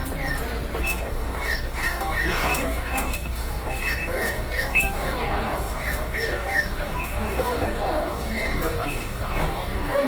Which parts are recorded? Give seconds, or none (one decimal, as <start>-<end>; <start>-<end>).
0.0-0.8